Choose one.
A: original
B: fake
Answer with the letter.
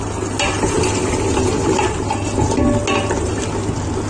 A